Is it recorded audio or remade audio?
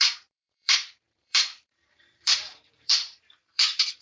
remade